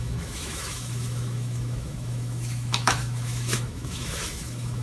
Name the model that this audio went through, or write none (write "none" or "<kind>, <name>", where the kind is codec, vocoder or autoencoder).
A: autoencoder, DAC-VAE